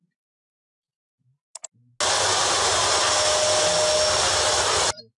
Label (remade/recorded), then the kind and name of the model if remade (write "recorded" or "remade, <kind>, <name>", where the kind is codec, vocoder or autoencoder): recorded